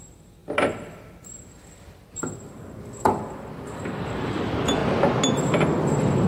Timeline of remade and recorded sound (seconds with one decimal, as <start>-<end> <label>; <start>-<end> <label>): 0.0-4.8 remade; 4.8-5.8 recorded; 5.8-6.3 remade

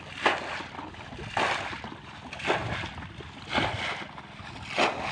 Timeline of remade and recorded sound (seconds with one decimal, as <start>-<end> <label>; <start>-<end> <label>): 0.0-5.1 recorded